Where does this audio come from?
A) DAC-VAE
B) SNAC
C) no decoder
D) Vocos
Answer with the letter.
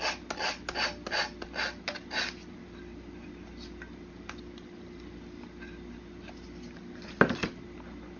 C